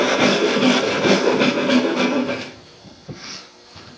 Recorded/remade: remade